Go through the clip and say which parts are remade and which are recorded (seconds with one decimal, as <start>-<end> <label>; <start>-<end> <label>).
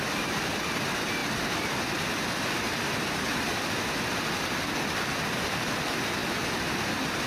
0.0-7.3 recorded